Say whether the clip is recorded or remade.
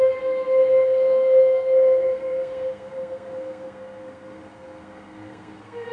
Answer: remade